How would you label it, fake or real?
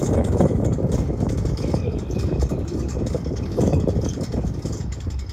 fake